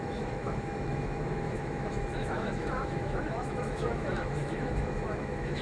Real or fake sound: fake